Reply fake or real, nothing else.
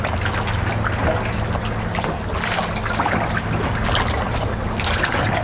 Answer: real